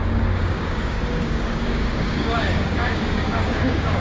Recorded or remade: remade